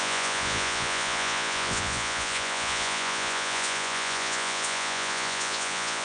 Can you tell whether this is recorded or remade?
remade